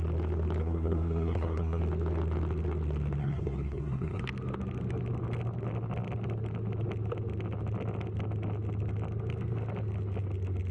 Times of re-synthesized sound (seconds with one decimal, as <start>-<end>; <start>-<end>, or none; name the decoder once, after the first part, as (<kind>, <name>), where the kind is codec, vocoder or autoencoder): 0.6-1.8 (codec, SNAC); 3.2-4.2